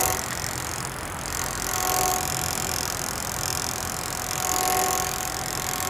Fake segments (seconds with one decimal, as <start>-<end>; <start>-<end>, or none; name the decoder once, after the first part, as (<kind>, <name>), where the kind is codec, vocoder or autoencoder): none